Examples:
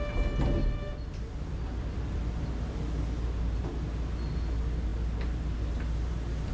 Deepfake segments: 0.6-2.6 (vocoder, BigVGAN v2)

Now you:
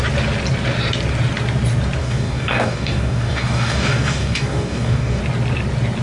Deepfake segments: 2.0-5.2 (codec, DAC)

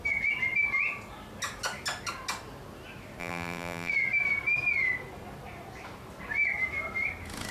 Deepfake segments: 3.2-3.9 (vocoder, BigVGAN v2)

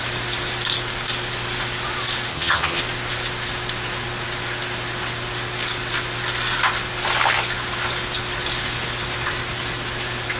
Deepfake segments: 2.3-2.8 (vocoder, HiFi-GAN)

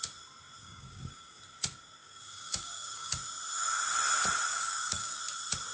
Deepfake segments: 0.6-1.4 (codec, DAC); 2.0-3.1; 4.5-5.2

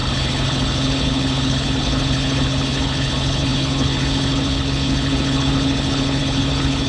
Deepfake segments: 0.0-6.9 (codec, HILCodec)